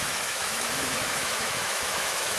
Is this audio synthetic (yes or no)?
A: yes